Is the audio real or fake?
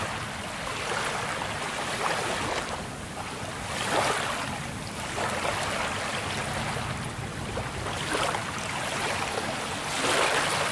real